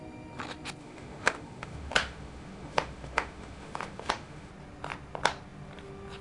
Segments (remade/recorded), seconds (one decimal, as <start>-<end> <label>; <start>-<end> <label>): 0.0-0.8 recorded; 0.8-4.5 remade; 4.5-6.2 recorded